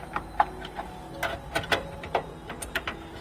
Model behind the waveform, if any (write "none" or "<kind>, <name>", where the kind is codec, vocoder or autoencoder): none